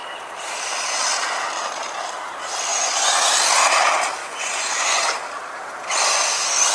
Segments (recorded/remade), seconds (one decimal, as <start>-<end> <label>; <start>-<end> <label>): 0.0-2.7 recorded; 2.7-3.3 remade; 3.3-4.2 recorded; 4.2-5.2 remade; 5.2-6.7 recorded